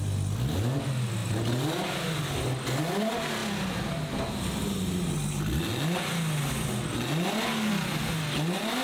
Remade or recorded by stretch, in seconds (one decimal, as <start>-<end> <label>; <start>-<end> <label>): 0.0-8.8 recorded